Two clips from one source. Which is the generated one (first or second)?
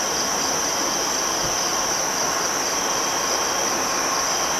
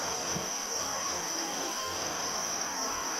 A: second